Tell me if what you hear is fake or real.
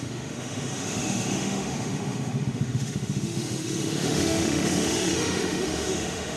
fake